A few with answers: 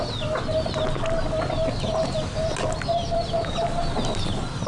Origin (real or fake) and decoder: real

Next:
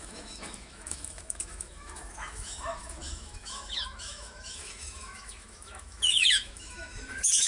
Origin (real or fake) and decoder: fake, autoencoder, DAC-VAE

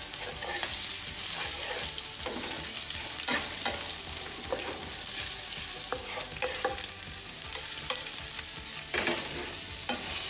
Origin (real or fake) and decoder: real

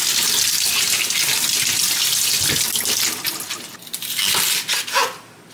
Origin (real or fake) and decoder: real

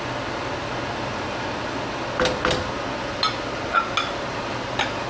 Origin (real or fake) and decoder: real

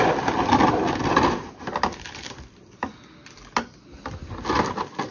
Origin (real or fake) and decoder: real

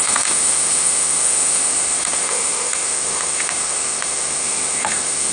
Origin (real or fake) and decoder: fake, autoencoder, DAC-VAE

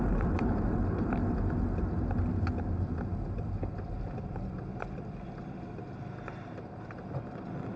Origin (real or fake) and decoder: real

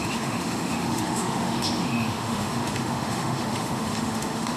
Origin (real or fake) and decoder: fake, autoencoder, DAC-VAE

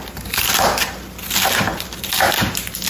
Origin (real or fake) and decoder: real